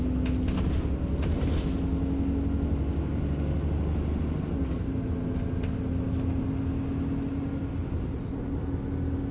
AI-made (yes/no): no